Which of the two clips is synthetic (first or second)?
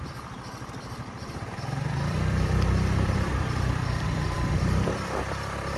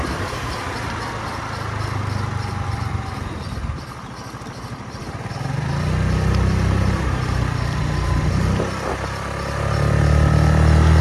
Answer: first